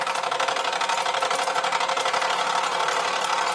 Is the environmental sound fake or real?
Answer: real